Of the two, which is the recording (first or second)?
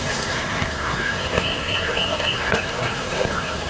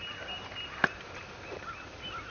second